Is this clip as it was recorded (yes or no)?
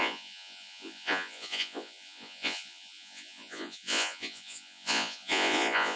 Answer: no